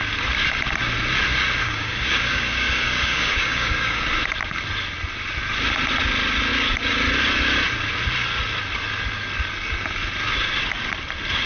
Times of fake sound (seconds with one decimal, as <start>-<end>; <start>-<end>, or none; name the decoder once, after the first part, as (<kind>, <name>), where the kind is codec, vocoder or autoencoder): 1.6-4.0 (codec, DAC)

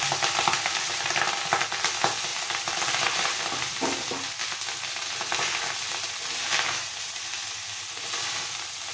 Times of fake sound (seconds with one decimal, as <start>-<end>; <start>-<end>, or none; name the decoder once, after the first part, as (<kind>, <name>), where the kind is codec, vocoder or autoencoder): none

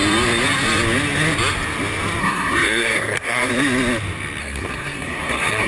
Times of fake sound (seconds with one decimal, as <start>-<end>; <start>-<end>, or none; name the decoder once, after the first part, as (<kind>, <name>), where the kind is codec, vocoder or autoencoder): 2.2-3.5 (codec, SNAC); 4.4-5.7

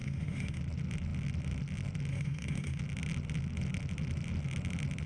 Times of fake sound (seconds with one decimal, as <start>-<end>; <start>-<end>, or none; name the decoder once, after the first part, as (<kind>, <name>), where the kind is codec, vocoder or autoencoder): 0.0-0.6 (autoencoder, DAC-VAE); 2.1-2.8